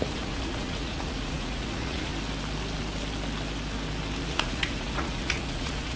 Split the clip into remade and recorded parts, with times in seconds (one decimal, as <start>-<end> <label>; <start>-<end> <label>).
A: 0.0-2.1 remade; 2.1-4.2 recorded; 4.2-6.0 remade